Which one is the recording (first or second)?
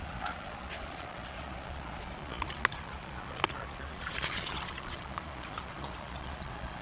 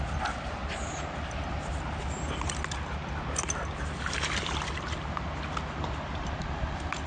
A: second